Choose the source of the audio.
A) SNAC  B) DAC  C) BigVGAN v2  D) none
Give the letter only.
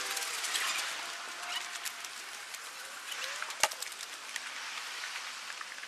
D